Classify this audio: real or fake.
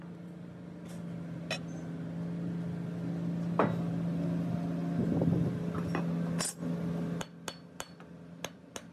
real